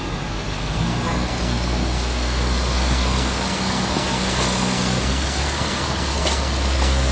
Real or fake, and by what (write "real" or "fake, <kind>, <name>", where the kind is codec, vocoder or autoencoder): fake, codec, SNAC